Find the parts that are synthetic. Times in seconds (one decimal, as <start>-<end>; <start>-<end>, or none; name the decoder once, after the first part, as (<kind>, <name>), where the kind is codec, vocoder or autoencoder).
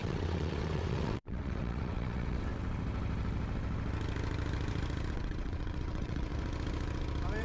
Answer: 0.0-2.5 (vocoder, WaveNeXt); 5.1-6.3